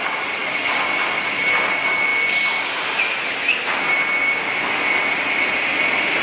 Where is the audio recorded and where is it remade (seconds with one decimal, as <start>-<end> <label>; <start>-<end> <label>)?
0.0-6.2 recorded

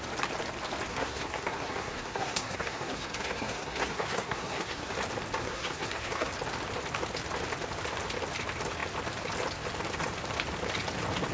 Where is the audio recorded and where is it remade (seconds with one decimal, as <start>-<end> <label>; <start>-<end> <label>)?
0.0-0.9 recorded; 0.9-4.9 remade; 4.9-5.4 recorded; 5.4-6.3 remade; 6.3-11.3 recorded

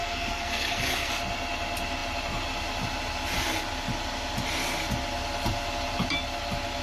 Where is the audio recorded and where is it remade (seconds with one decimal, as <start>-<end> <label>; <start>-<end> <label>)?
0.0-1.1 remade; 1.1-6.8 recorded